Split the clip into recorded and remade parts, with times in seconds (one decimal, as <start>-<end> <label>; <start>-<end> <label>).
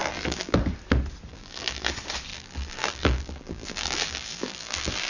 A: 0.0-0.6 remade; 0.6-1.3 recorded; 1.3-1.9 remade; 1.9-2.3 recorded; 2.3-5.1 remade